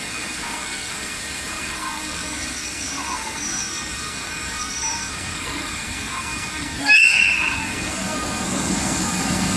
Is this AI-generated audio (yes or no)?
yes